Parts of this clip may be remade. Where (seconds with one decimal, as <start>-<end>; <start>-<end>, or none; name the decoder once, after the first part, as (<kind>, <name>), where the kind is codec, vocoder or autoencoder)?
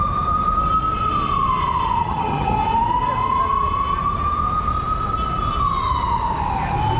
2.0-2.6 (vocoder, HiFi-GAN)